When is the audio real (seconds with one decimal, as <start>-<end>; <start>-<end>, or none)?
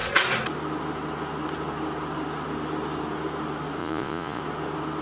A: 0.0-3.8; 4.4-5.0